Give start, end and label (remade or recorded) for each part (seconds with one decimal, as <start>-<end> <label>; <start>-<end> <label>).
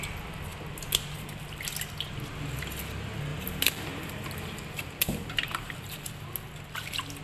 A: 0.0-3.3 recorded; 3.3-6.1 remade; 6.1-7.2 recorded